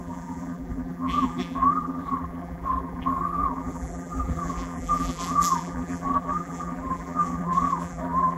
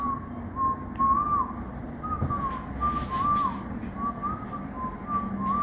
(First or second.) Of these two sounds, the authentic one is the second